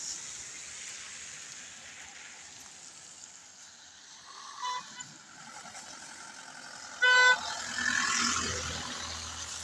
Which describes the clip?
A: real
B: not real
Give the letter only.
A